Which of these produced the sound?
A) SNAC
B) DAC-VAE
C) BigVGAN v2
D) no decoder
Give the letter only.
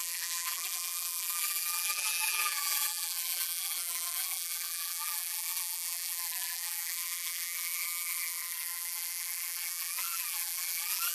C